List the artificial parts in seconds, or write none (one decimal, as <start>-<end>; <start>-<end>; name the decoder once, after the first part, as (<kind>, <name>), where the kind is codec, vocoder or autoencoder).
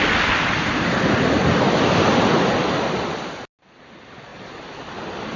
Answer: none